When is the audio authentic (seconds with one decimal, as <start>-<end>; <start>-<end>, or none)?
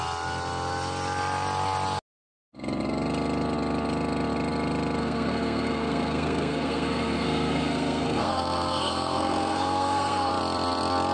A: 0.0-5.0; 10.3-11.1